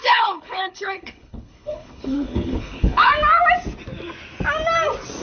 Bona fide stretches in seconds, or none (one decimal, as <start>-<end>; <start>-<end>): 3.1-5.2